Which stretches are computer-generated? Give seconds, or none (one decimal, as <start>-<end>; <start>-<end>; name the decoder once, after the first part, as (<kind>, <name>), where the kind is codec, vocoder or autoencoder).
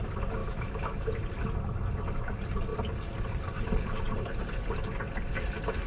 0.4-1.2 (autoencoder, DAC-VAE)